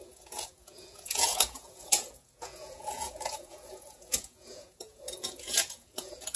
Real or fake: fake